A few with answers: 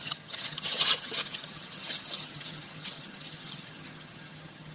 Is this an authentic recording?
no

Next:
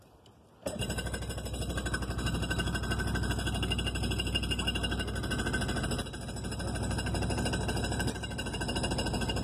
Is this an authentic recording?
yes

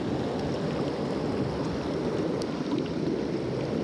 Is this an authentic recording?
yes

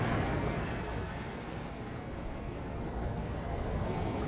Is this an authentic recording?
no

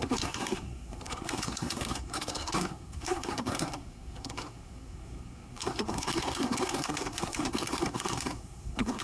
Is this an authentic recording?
no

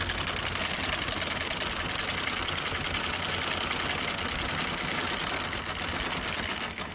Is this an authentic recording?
yes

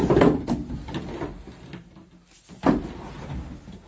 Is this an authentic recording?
yes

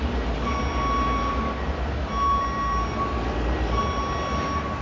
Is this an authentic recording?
yes